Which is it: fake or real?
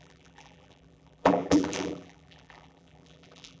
fake